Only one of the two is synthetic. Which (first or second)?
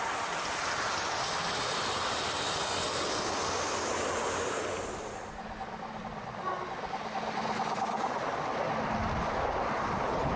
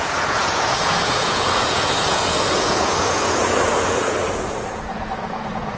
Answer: second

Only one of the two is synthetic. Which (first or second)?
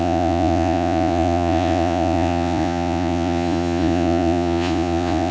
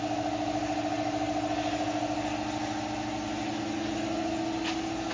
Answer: first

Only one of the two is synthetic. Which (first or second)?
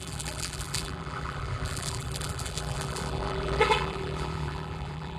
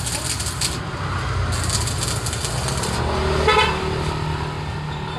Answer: first